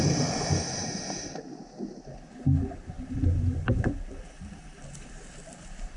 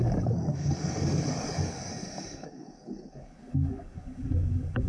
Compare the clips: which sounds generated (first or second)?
second